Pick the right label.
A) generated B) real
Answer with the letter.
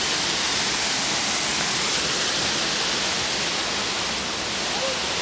B